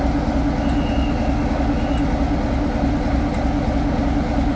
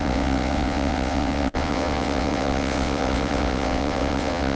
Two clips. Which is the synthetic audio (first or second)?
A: second